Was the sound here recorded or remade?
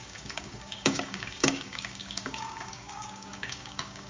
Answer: remade